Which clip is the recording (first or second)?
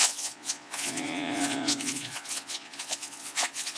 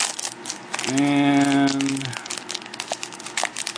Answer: second